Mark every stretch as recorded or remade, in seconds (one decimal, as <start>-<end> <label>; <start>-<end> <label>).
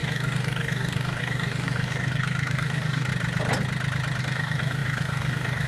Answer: 0.0-3.1 remade; 3.1-4.2 recorded; 4.2-5.7 remade